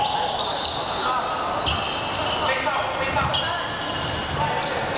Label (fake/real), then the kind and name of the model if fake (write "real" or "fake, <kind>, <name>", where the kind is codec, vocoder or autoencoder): real